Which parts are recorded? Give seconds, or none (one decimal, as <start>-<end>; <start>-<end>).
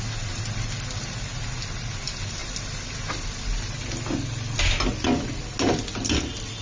0.0-6.6